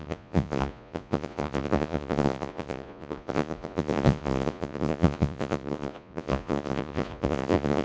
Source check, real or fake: fake